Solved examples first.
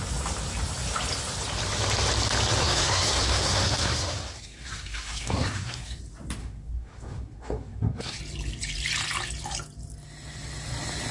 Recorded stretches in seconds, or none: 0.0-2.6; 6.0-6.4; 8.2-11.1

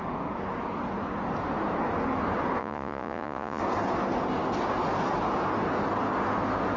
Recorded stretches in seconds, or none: 0.0-2.6; 3.6-6.8

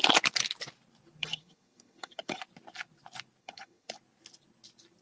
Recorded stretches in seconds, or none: 0.0-1.2; 2.4-3.4; 3.9-5.0

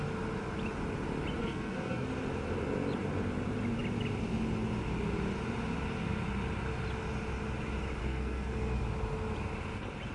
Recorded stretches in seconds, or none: 0.0-1.4; 2.1-8.0; 8.8-10.1

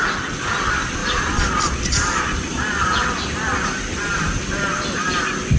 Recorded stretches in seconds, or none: 0.0-5.6

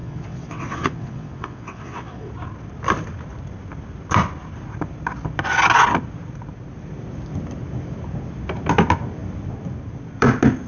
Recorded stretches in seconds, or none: 2.3-10.7

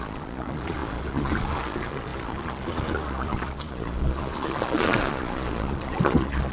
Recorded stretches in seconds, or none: none